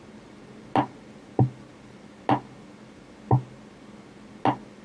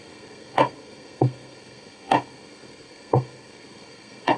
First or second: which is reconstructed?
second